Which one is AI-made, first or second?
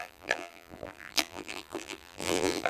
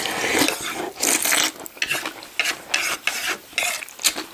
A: first